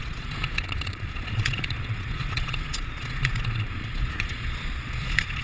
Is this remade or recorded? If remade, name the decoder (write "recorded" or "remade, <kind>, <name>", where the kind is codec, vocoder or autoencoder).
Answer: remade, vocoder, Vocos